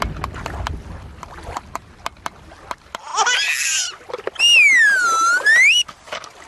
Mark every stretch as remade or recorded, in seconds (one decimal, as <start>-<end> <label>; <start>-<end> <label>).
0.0-6.5 recorded